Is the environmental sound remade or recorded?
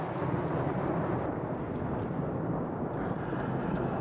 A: recorded